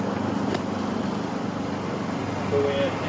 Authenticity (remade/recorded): recorded